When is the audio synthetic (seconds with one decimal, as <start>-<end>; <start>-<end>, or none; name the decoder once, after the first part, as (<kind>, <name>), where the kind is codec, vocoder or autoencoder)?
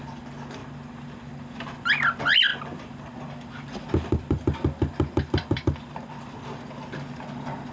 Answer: 0.6-1.2 (vocoder, BigVGAN v2); 2.5-6.3